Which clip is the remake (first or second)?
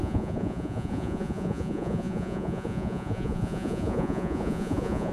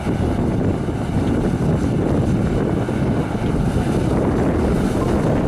first